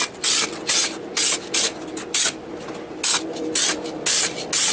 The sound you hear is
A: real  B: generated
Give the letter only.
A